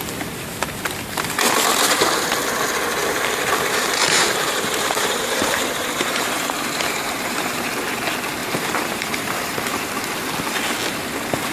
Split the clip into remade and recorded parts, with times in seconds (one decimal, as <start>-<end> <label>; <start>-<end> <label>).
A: 0.0-3.0 recorded; 3.0-7.7 remade; 7.7-8.4 recorded; 8.4-9.9 remade; 9.9-11.5 recorded

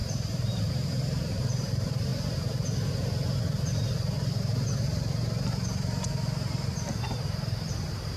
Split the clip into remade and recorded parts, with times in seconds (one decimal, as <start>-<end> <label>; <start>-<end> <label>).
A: 0.0-2.1 remade; 2.1-7.0 recorded; 7.0-8.2 remade

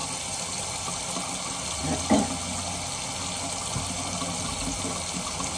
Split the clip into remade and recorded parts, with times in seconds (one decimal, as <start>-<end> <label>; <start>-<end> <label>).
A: 0.0-1.1 remade; 1.1-5.6 recorded

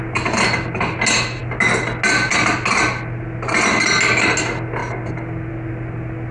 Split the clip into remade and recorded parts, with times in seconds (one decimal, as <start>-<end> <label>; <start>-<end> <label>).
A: 0.0-6.3 recorded

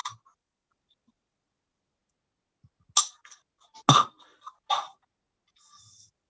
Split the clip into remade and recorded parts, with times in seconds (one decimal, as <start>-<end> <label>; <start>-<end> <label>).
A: 0.0-2.0 remade; 2.0-5.8 recorded; 5.8-6.3 remade

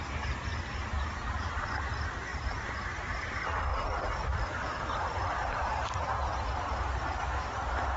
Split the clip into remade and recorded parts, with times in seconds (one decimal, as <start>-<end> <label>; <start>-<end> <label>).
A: 0.0-0.5 recorded; 0.5-1.6 remade; 1.6-8.0 recorded

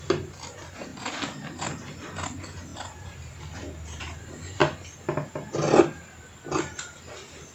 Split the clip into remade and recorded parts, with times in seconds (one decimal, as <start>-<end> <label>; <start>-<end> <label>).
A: 0.0-0.9 remade; 0.9-1.9 recorded; 1.9-2.7 remade; 2.7-4.0 recorded; 4.0-4.6 remade; 4.6-6.8 recorded; 6.8-7.5 remade

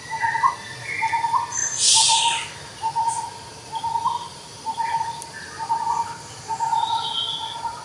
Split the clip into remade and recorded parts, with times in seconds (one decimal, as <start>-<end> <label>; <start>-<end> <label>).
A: 0.0-4.3 recorded; 4.3-5.7 remade; 5.7-7.8 recorded